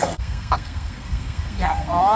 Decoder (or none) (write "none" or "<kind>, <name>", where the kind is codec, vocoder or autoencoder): codec, SNAC